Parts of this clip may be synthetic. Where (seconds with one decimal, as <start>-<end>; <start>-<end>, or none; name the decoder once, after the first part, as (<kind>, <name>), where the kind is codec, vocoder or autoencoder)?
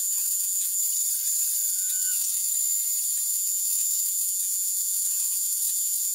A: 0.0-0.8 (vocoder, Vocos); 1.7-2.5; 3.3-6.1